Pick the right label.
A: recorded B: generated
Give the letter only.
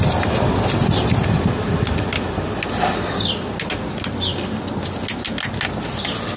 A